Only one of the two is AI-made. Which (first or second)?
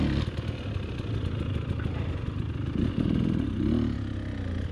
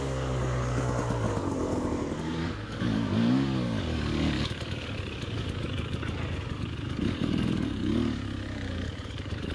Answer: second